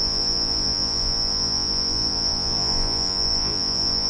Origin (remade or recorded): remade